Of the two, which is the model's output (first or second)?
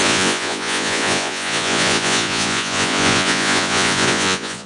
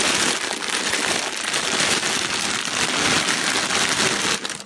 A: first